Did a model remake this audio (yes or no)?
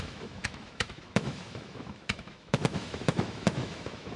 yes